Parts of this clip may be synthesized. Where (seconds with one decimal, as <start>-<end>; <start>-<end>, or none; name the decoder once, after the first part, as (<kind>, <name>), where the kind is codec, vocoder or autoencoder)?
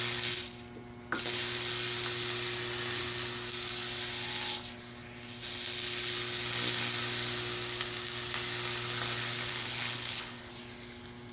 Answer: 9.5-10.5 (codec, HILCodec)